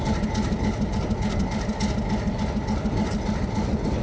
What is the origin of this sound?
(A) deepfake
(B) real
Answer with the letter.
B